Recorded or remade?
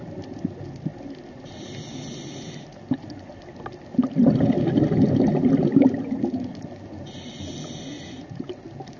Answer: recorded